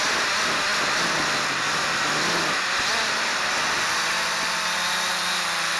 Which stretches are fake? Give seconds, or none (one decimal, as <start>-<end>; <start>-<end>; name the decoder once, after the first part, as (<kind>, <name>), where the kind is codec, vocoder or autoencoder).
none